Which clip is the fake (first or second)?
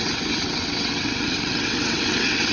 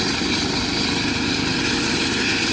first